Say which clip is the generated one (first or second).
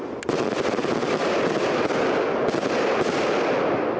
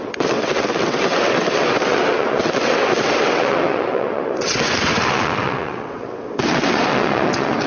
second